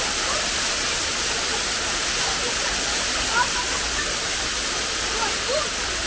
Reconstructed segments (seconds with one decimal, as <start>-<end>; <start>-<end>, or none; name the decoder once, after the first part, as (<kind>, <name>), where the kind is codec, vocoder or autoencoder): none